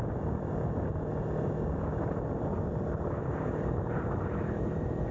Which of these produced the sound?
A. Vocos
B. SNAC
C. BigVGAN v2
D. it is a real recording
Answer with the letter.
D